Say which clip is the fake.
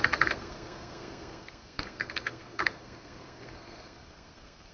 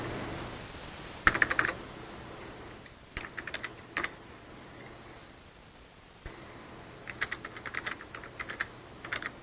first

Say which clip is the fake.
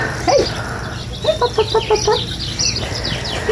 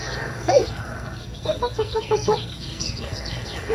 second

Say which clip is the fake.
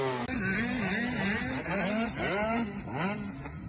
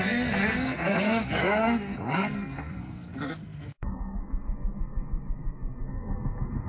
second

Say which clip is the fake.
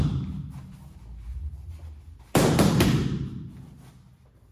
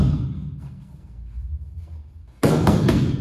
second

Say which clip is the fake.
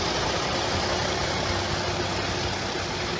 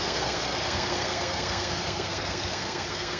second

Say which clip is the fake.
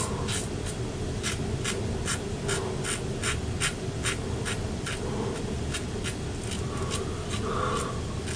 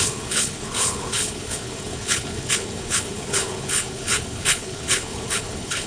second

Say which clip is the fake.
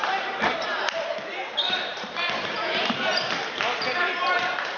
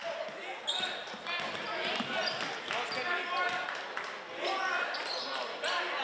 first